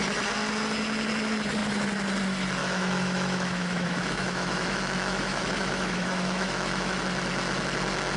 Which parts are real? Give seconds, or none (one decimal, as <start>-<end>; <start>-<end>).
0.0-2.6; 7.0-8.2